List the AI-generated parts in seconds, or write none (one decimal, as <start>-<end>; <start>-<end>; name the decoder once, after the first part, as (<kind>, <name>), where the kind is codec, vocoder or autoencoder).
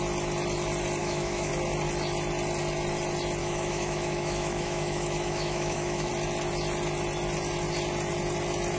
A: 1.0-1.5 (autoencoder, DAC-VAE); 3.4-6.1